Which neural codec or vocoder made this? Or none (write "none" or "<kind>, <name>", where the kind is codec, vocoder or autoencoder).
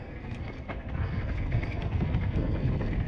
codec, SNAC